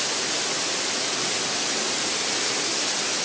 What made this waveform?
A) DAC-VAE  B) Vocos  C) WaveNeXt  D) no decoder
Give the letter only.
D